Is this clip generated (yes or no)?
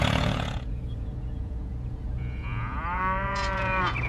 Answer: yes